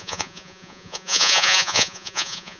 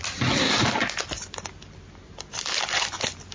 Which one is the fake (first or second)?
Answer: first